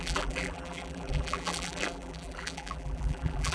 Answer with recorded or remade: remade